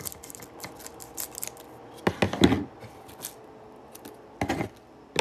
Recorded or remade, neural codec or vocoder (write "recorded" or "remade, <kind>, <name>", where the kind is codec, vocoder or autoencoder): recorded